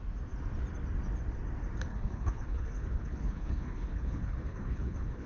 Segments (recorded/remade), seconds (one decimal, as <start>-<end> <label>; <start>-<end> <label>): 0.0-1.9 recorded; 1.9-5.3 remade